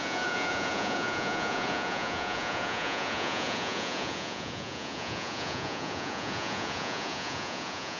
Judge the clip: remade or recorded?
remade